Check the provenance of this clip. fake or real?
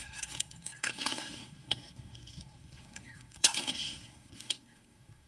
fake